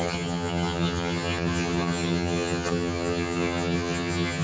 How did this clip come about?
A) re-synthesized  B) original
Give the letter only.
A